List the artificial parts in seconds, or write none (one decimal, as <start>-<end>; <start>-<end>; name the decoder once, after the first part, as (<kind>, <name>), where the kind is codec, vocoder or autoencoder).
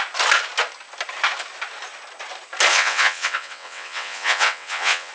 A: 2.7-5.1 (vocoder, WaveNeXt)